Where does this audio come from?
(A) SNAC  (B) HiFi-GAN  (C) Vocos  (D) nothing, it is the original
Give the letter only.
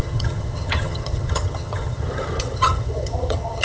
B